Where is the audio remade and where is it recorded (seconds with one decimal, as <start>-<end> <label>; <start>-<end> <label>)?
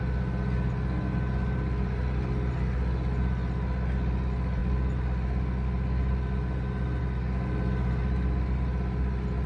0.0-9.5 recorded